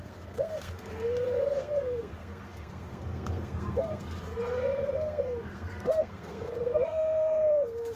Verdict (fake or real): fake